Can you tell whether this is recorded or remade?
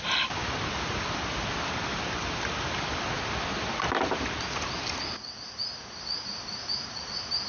recorded